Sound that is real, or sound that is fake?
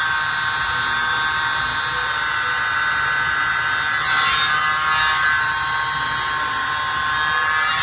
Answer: real